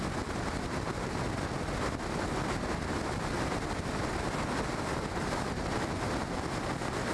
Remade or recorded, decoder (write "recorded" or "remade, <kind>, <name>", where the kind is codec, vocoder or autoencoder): recorded